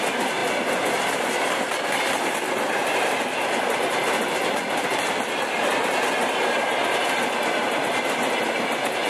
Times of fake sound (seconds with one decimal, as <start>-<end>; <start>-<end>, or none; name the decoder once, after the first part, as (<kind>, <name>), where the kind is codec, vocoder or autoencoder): none